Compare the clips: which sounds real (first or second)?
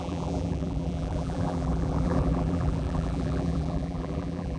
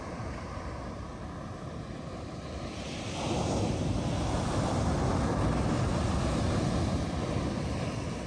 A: second